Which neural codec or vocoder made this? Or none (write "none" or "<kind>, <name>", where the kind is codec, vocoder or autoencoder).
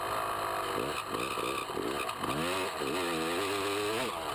none